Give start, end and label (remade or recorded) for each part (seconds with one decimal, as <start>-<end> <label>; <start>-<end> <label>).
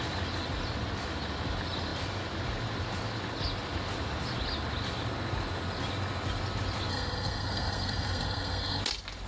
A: 0.0-6.9 recorded; 6.9-8.8 remade; 8.8-9.3 recorded